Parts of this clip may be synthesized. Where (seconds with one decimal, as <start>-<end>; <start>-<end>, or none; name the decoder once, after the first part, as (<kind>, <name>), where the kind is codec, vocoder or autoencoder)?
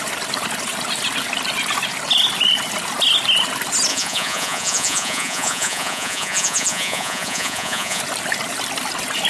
3.9-8.0 (vocoder, Vocos)